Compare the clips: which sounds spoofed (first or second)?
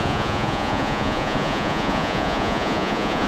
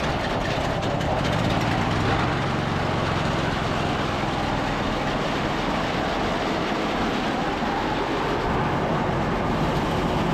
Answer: first